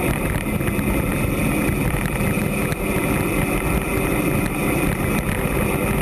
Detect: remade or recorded recorded